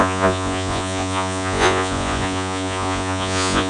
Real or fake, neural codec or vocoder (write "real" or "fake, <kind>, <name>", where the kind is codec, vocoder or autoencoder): fake, vocoder, Vocos